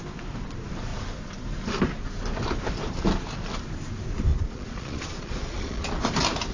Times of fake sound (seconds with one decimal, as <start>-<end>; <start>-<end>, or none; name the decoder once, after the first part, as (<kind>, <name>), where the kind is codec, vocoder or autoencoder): 4.3-5.8 (vocoder, Vocos)